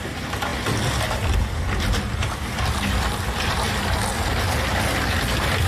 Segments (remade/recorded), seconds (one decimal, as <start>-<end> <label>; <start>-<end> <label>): 0.0-5.7 recorded